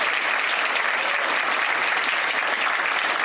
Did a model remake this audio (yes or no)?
no